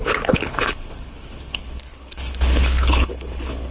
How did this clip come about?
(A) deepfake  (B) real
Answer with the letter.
A